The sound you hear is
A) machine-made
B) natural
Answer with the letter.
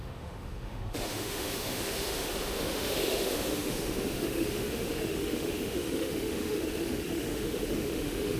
A